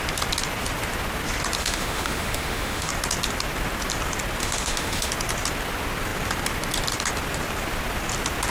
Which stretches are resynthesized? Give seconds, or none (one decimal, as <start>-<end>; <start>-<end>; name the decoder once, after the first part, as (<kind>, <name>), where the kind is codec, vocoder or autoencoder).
1.6-2.9 (autoencoder, DAC-VAE); 4.4-5.1